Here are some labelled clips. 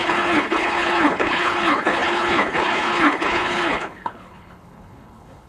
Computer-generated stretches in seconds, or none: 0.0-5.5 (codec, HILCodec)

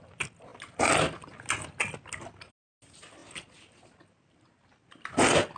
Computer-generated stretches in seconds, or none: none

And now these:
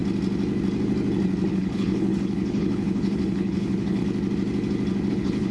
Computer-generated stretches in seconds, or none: 1.5-4.0 (codec, HILCodec); 5.1-5.5

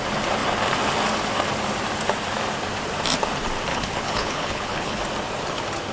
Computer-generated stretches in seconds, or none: 3.7-5.0 (codec, HILCodec)